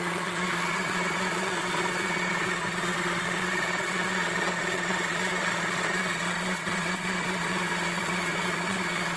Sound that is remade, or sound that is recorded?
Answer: remade